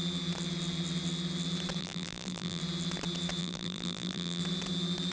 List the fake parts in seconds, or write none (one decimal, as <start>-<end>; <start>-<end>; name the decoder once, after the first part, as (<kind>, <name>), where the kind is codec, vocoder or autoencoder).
1.8-2.6 (vocoder, BigVGAN v2); 3.4-4.4